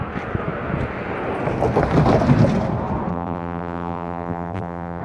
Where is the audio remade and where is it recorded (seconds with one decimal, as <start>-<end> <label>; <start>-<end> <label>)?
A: 0.0-3.1 recorded; 3.1-5.0 remade